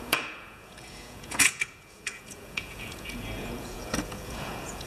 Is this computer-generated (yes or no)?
yes